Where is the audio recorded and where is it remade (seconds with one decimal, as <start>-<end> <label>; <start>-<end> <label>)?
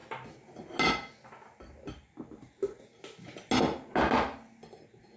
0.0-5.2 recorded